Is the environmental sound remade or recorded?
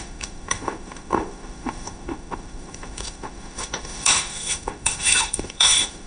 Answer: remade